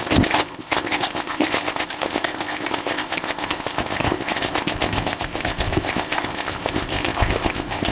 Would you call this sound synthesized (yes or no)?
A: yes